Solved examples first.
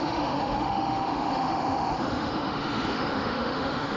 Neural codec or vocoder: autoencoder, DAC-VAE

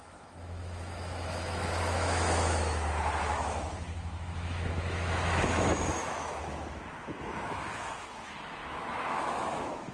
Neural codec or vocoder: autoencoder, DAC-VAE